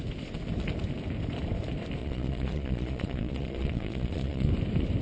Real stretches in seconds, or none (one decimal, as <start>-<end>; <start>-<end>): 0.0-2.0; 4.5-5.0